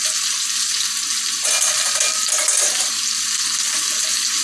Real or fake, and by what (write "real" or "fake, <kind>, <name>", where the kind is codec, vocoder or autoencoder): real